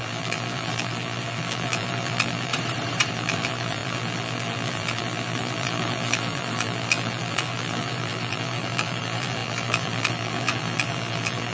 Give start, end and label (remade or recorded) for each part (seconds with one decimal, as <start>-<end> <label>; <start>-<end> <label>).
0.0-2.5 remade; 2.5-3.1 recorded; 3.1-11.5 remade